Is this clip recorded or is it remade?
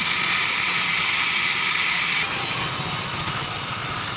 recorded